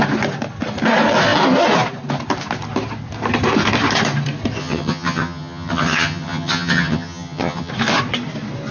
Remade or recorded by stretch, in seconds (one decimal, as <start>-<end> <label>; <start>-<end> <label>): 0.0-4.6 recorded; 4.6-7.7 remade; 7.7-8.7 recorded